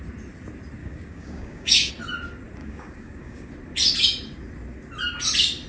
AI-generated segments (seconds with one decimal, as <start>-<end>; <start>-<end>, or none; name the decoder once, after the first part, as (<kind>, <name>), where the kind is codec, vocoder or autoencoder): 0.8-1.9 (codec, DAC); 2.6-3.5